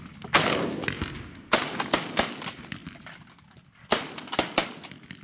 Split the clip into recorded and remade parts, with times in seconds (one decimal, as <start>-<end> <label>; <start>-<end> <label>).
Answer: 0.0-5.2 recorded